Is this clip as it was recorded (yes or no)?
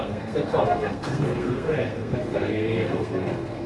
no